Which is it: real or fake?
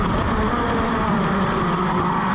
real